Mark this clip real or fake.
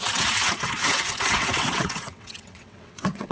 fake